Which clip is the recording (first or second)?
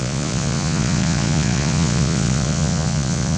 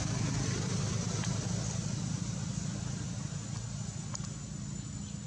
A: second